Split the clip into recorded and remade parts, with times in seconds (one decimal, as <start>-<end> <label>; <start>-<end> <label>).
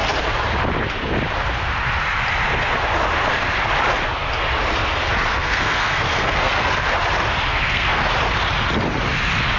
0.0-5.3 recorded; 5.3-6.7 remade; 6.7-7.5 recorded; 7.5-8.0 remade; 8.0-9.6 recorded